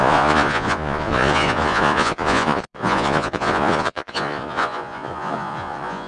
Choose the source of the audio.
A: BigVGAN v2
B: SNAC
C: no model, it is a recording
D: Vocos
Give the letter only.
D